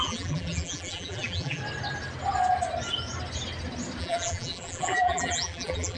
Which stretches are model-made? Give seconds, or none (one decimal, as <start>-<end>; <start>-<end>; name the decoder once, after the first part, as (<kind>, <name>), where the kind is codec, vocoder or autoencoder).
0.0-1.6 (vocoder, BigVGAN v2); 4.0-6.0